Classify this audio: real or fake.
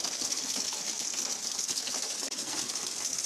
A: fake